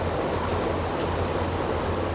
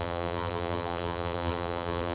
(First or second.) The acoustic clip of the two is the first